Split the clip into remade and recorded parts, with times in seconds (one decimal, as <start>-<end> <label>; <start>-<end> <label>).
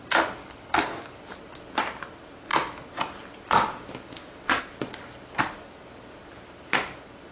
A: 0.0-0.4 recorded; 0.4-1.2 remade; 1.2-7.3 recorded